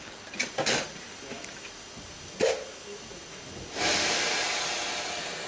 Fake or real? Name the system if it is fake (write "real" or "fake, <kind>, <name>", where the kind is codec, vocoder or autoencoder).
real